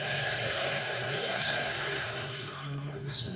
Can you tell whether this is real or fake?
fake